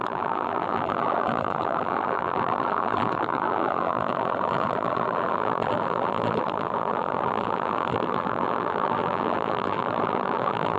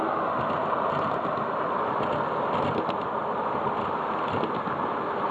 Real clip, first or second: second